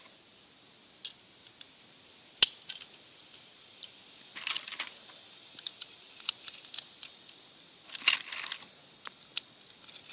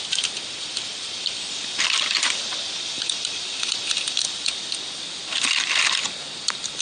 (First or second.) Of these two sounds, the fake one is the second